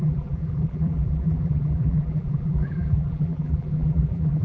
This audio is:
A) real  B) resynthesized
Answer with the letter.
B